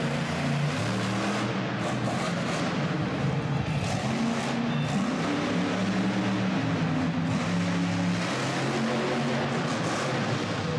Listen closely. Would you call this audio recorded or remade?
recorded